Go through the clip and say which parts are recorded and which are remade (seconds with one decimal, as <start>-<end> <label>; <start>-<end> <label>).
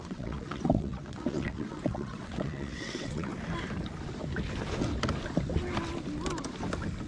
0.0-3.3 remade; 3.3-7.1 recorded